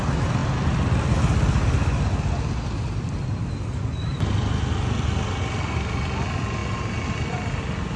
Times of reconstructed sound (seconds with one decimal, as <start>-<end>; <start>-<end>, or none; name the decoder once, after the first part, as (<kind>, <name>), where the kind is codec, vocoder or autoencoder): none